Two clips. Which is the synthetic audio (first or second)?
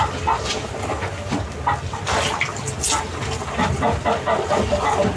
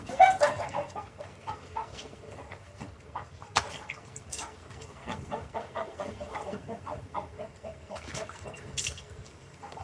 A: second